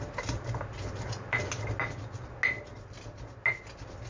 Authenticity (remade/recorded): recorded